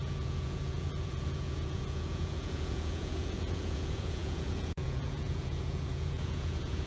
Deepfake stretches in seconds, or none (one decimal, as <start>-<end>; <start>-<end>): 0.0-6.9

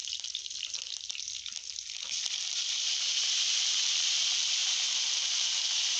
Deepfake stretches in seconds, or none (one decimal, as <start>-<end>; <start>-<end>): 2.5-6.0

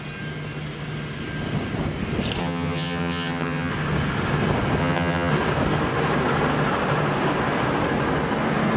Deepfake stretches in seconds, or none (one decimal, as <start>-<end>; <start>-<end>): 2.4-3.7; 4.8-5.3

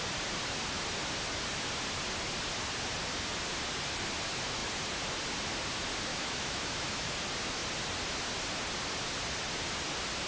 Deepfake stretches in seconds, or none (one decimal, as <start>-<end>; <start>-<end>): 6.1-7.1

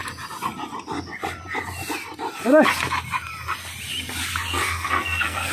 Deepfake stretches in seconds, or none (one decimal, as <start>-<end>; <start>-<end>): 4.5-5.5